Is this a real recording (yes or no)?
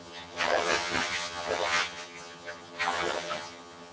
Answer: no